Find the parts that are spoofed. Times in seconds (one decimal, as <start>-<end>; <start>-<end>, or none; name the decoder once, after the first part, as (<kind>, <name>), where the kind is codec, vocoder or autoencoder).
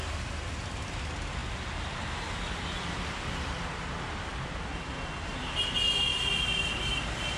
none